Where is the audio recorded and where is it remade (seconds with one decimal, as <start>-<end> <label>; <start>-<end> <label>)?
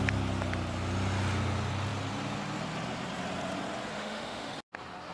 0.0-3.9 recorded; 3.9-4.5 remade; 4.5-5.1 recorded